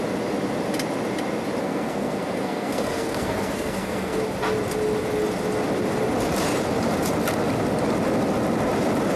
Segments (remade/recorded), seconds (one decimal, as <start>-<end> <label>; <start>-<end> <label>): 0.0-1.6 recorded; 1.6-4.2 remade; 4.2-9.2 recorded